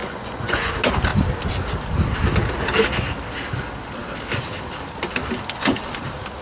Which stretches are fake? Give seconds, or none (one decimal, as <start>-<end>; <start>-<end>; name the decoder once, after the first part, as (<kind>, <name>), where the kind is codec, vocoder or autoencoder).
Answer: 0.0-0.7 (vocoder, Vocos)